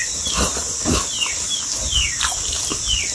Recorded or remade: recorded